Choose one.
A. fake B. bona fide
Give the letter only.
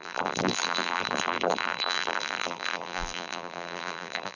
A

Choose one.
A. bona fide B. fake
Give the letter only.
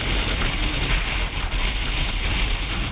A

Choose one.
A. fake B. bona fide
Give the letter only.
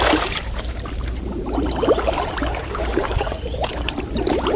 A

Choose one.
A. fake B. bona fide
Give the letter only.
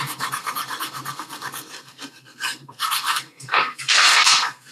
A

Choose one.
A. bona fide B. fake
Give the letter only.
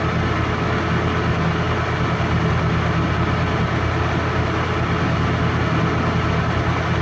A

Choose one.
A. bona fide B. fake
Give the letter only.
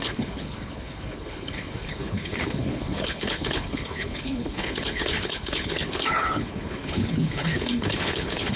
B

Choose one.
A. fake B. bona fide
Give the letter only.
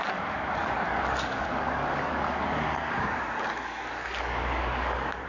A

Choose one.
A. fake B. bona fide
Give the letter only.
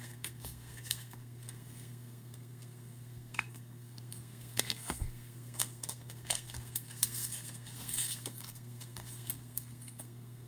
A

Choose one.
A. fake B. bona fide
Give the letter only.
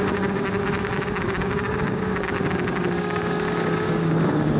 A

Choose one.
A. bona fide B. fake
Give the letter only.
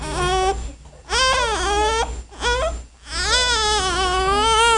A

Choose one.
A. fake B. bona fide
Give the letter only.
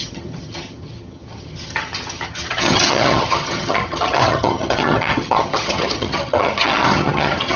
A